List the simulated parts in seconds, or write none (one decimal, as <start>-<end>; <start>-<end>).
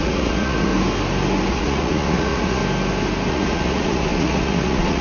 0.0-0.7; 1.5-2.6; 3.3-5.0